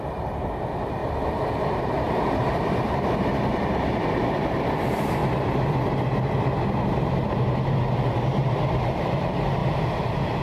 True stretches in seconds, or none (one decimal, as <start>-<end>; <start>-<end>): 1.0-1.8; 5.2-7.0; 9.6-10.4